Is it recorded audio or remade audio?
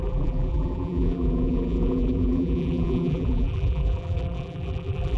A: remade